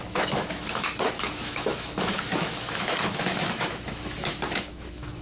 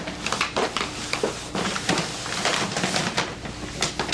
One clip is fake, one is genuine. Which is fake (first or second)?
first